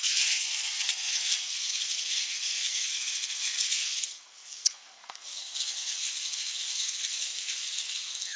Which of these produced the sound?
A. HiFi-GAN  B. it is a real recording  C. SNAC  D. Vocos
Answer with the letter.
C